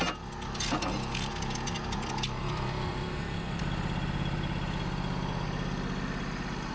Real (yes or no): yes